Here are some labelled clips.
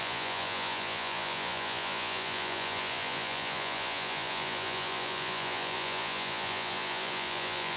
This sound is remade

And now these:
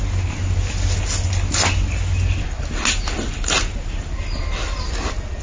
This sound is recorded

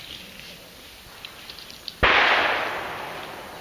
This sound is recorded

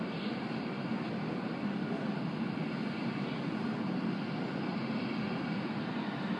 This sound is recorded